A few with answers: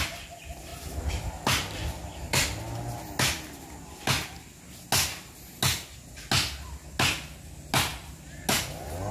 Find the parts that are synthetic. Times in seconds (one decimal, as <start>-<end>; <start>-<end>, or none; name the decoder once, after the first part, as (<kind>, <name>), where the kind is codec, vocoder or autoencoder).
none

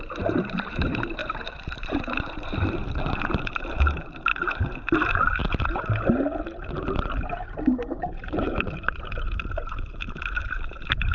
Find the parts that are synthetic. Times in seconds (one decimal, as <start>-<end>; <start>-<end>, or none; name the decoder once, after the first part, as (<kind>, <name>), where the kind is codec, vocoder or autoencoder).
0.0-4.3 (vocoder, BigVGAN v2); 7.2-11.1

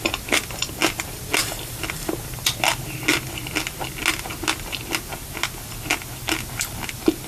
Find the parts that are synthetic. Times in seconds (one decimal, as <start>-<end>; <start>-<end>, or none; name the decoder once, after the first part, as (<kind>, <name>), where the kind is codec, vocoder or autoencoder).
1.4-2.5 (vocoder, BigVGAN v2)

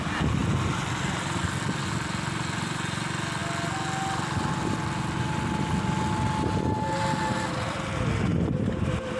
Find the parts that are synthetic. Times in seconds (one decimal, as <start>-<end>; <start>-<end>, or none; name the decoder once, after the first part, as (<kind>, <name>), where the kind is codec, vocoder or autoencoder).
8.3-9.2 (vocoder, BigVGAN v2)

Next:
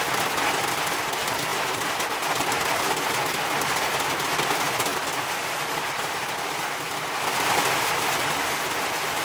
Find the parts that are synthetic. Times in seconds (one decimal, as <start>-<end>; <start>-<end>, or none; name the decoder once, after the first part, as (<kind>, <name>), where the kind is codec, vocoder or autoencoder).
4.9-9.2 (vocoder, BigVGAN v2)

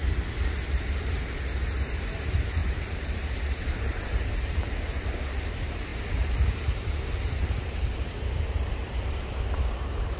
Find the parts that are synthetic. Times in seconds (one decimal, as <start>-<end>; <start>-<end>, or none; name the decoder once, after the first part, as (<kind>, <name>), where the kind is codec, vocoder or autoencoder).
1.9-10.2 (vocoder, BigVGAN v2)